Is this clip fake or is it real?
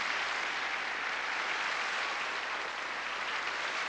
fake